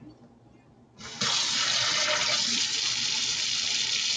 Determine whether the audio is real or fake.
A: real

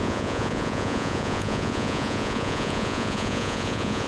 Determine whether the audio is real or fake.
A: fake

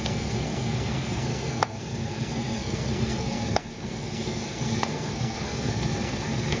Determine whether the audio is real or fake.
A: fake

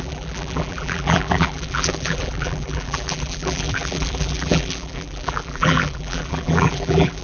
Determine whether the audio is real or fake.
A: fake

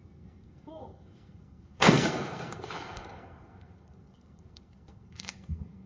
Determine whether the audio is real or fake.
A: fake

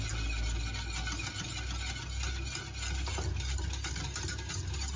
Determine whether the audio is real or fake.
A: real